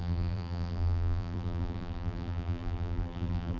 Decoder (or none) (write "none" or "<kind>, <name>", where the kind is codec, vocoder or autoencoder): vocoder, BigVGAN v2